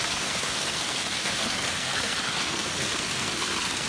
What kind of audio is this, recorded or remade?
remade